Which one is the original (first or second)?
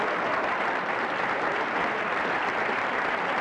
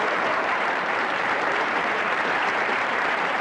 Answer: first